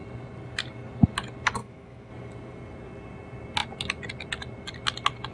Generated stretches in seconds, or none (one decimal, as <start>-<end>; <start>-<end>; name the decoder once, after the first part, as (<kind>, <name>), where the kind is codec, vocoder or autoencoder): 1.6-2.1 (autoencoder, DAC-VAE)